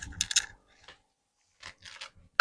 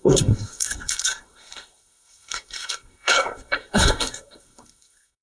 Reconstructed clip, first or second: second